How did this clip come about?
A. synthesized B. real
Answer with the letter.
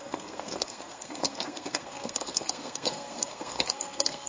A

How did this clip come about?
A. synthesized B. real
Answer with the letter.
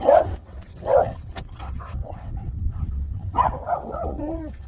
A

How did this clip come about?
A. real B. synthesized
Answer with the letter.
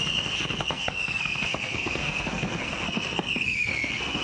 B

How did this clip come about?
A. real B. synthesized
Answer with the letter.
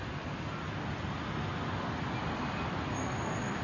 A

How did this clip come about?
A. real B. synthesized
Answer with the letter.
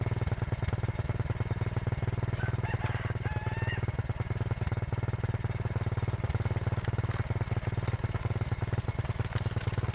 A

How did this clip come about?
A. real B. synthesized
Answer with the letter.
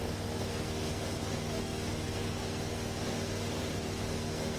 B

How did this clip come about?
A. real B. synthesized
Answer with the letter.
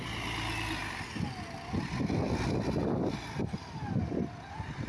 A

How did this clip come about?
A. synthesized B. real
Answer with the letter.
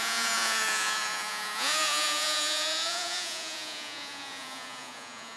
A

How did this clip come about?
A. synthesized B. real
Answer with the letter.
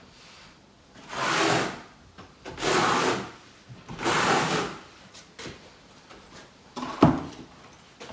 B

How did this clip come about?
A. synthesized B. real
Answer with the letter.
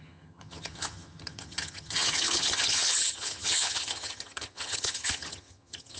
A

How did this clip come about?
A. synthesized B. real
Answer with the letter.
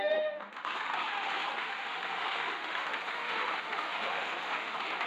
A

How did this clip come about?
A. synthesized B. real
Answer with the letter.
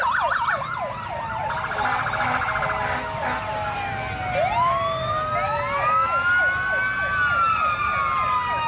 B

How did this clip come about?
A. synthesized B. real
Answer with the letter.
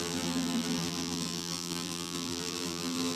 A